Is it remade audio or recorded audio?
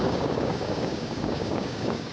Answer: remade